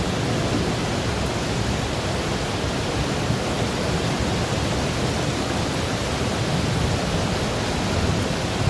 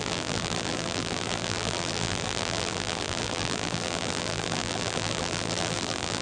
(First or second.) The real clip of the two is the first